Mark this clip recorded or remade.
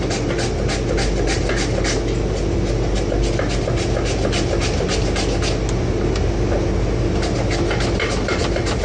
recorded